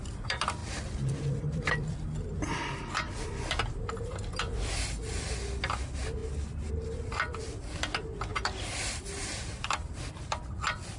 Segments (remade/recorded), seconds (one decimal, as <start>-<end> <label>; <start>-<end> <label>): 0.0-0.6 recorded; 0.6-5.2 remade; 5.2-8.3 recorded; 8.3-11.0 remade